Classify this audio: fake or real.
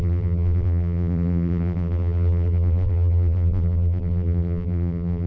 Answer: fake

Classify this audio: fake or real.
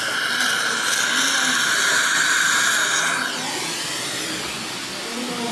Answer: real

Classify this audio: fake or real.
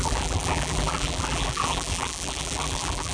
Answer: fake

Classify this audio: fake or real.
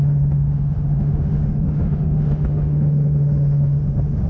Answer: fake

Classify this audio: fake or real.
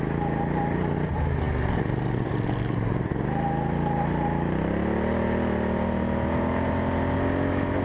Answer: real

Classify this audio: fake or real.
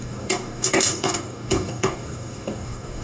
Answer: fake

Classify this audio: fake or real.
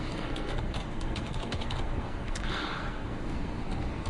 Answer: fake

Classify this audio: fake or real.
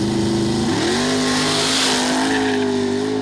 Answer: real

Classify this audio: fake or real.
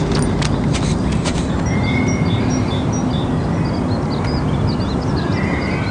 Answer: real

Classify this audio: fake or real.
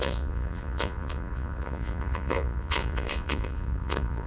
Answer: fake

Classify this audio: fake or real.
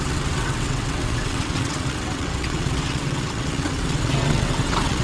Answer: fake